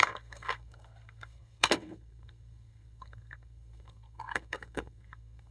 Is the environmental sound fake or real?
fake